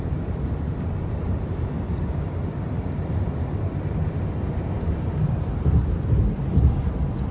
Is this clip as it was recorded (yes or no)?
no